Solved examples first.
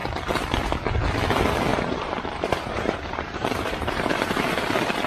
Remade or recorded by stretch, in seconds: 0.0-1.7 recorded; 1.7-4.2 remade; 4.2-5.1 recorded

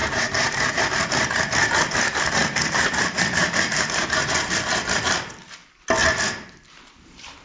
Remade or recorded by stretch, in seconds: 0.0-5.6 remade; 5.6-6.2 recorded; 6.2-7.4 remade

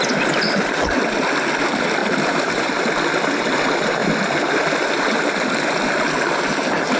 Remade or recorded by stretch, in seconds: 0.0-2.0 recorded; 2.0-2.8 remade; 2.8-7.0 recorded

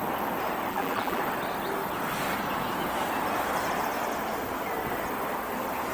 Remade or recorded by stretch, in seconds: 0.0-0.7 recorded; 0.7-1.2 remade; 1.2-5.9 recorded

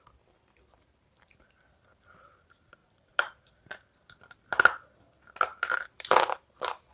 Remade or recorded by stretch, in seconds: 0.0-2.8 recorded; 2.8-3.5 remade; 3.5-5.5 recorded; 5.5-6.4 remade; 6.4-6.9 recorded

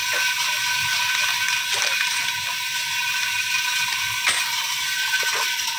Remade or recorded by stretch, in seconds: 0.0-5.8 recorded

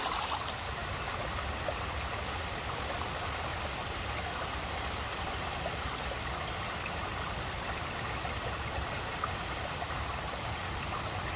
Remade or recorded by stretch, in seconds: 0.0-0.8 remade; 0.8-2.2 recorded; 2.2-3.5 remade; 3.5-4.0 recorded; 4.0-11.4 remade